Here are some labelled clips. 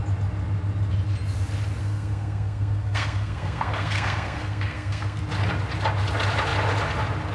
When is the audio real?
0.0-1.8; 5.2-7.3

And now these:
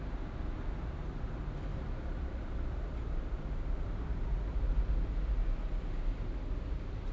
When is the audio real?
0.0-1.7; 4.9-7.1

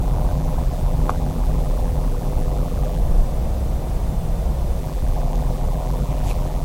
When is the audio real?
3.0-4.8

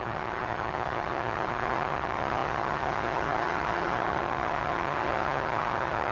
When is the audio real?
none

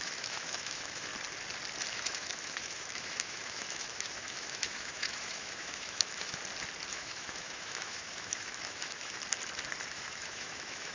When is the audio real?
1.1-1.9; 6.4-6.9; 9.2-9.9

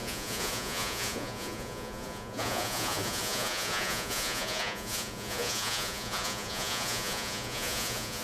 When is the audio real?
none

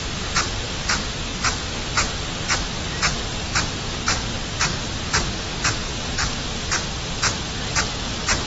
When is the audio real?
0.0-5.8; 6.8-8.5

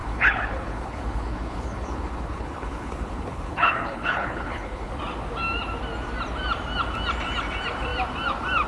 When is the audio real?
5.0-8.7